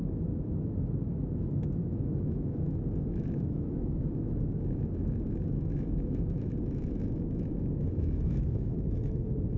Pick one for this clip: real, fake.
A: fake